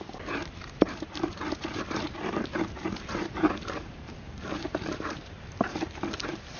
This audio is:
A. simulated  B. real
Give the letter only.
A